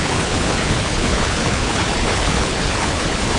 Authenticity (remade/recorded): remade